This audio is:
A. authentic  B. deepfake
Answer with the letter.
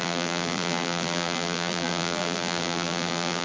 B